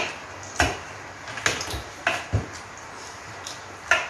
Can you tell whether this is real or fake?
real